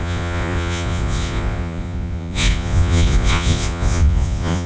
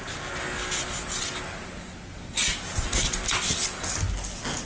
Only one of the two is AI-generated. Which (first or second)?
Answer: first